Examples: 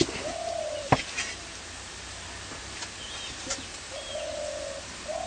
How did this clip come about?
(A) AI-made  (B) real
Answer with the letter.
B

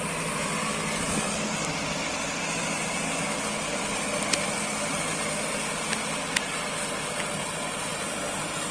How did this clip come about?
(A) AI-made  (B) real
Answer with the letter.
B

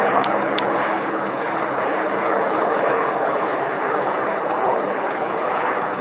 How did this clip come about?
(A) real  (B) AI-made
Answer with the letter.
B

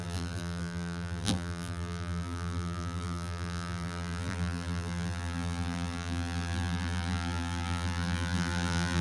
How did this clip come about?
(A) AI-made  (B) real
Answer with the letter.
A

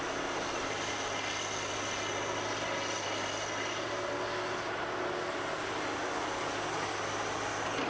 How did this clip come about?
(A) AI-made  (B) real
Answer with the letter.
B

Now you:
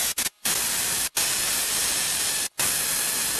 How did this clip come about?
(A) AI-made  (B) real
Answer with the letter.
B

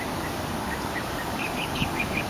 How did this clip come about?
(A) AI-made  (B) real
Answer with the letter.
A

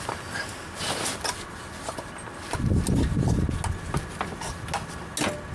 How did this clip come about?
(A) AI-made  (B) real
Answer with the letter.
B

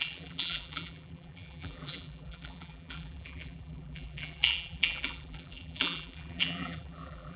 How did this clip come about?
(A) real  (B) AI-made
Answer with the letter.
B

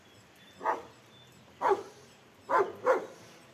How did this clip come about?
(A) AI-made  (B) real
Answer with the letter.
A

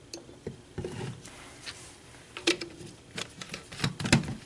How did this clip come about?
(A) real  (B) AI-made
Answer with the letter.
A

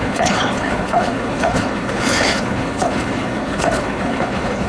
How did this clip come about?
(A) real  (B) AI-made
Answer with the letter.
B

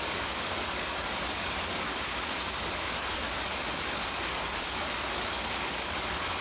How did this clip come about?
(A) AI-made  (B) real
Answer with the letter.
A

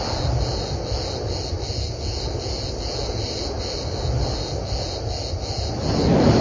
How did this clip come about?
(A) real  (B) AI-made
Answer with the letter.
A